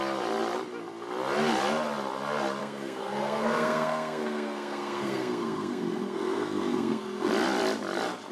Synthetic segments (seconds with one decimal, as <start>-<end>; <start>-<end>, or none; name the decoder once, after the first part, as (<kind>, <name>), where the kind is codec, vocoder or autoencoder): 2.6-7.3 (codec, SNAC)